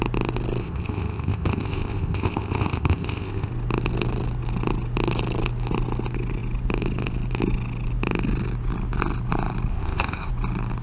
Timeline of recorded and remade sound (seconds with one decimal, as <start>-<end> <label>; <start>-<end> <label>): 0.0-0.6 recorded; 0.6-3.5 remade; 3.5-9.7 recorded; 9.7-10.3 remade; 10.3-10.8 recorded